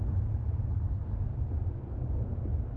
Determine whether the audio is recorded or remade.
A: recorded